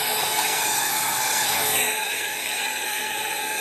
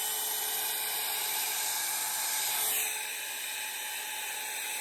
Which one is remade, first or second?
first